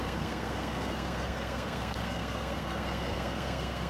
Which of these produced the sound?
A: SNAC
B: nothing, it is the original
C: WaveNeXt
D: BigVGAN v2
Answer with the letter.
A